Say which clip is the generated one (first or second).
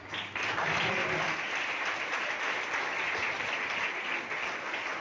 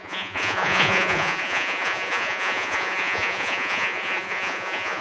second